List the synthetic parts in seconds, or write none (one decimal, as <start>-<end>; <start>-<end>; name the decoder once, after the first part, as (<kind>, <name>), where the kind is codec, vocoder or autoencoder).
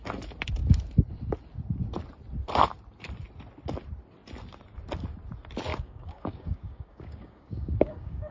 5.7-8.3 (codec, DAC)